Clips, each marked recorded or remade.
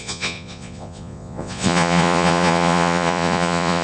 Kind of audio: remade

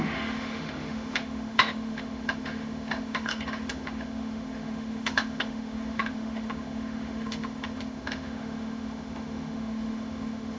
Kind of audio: remade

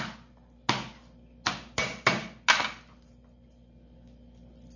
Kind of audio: recorded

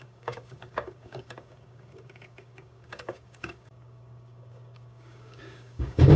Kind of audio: remade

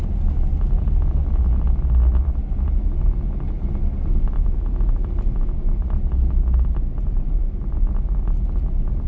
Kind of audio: recorded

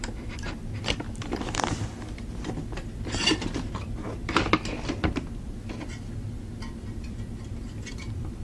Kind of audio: remade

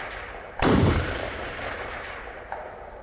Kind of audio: remade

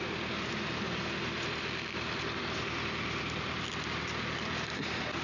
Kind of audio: recorded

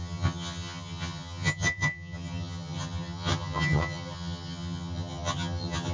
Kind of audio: remade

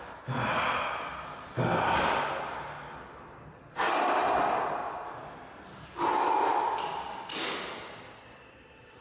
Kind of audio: recorded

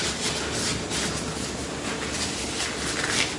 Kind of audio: recorded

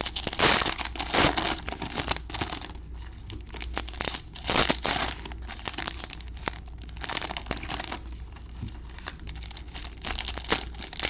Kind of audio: recorded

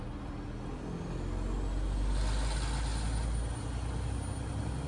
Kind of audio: recorded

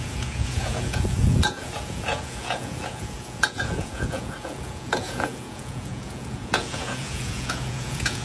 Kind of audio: remade